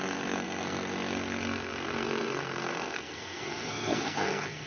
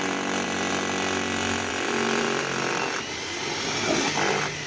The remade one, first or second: first